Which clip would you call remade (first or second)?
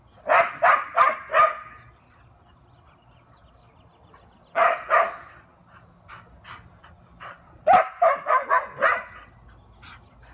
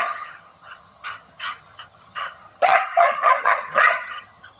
second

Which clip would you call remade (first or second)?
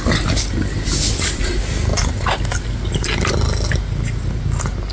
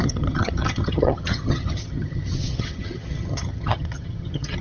second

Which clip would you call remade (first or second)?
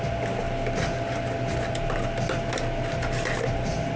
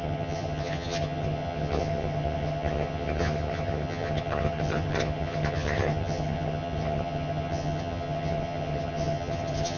second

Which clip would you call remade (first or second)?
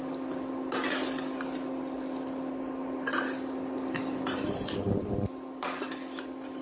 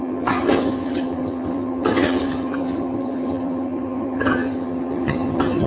second